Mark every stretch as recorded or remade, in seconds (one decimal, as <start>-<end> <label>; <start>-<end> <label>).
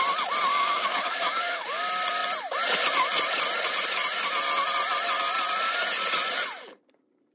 0.0-0.5 recorded; 0.5-1.8 remade; 1.8-7.3 recorded